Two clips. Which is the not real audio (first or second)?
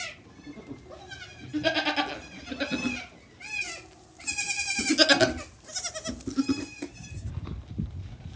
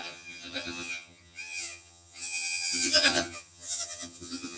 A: second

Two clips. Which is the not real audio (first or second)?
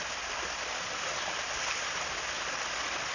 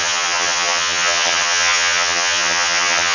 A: second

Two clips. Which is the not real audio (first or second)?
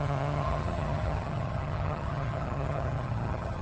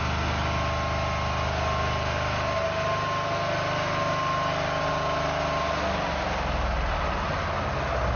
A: first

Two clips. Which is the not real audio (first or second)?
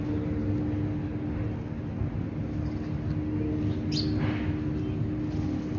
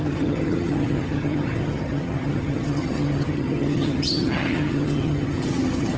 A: second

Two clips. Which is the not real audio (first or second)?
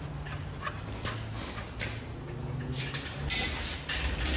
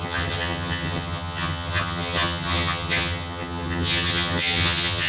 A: second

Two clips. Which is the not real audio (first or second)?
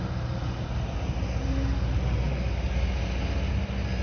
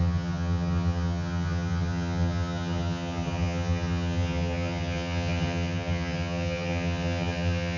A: second